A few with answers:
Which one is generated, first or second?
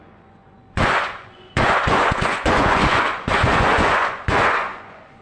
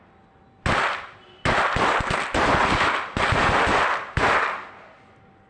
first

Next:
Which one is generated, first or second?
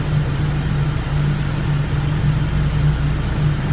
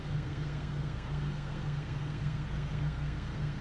second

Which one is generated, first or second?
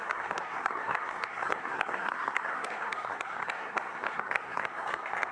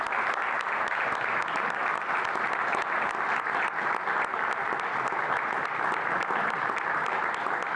first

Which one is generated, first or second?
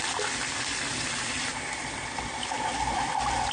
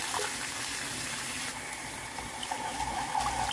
first